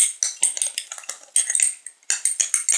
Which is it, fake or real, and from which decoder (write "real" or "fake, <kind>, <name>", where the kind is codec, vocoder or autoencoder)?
real